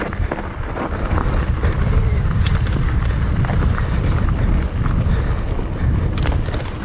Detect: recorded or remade remade